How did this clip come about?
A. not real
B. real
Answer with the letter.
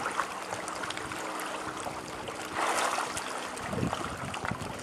B